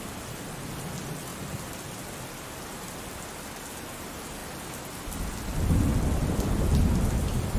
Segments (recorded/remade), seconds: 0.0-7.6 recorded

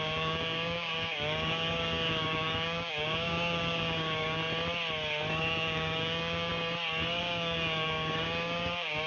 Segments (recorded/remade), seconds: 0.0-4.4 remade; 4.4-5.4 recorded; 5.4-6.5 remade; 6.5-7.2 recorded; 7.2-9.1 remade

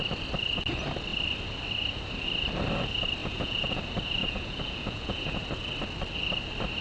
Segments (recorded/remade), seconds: 0.0-3.2 recorded; 3.2-3.8 remade; 3.8-4.2 recorded; 4.2-5.4 remade; 5.4-6.8 recorded

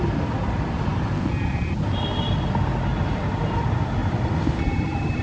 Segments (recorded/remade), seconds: 0.0-4.0 recorded; 4.0-5.2 remade

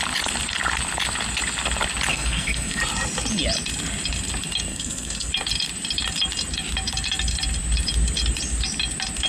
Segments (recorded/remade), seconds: 0.0-2.1 recorded; 2.1-2.8 remade; 2.8-4.7 recorded; 4.7-5.3 remade; 5.3-9.3 recorded